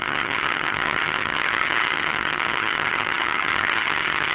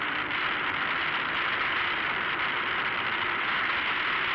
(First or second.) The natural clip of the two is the second